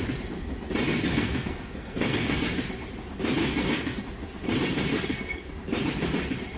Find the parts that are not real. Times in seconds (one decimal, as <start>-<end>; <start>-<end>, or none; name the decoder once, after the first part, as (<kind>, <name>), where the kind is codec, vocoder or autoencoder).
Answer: 1.1-2.5 (codec, SNAC); 3.4-4.0; 4.9-5.5